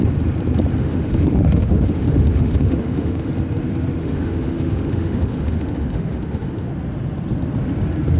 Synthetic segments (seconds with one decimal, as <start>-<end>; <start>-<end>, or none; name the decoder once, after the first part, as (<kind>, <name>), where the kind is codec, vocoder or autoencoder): 0.8-3.3 (autoencoder, DAC-VAE); 4.0-6.7